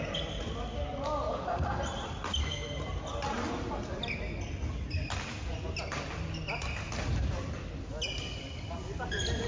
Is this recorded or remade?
recorded